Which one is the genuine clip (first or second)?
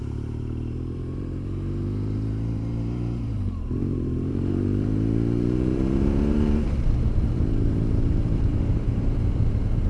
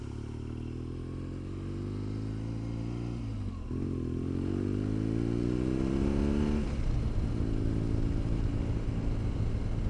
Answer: second